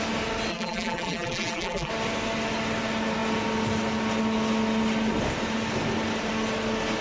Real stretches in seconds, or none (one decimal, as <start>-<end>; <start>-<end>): 0.0-0.5; 1.9-7.0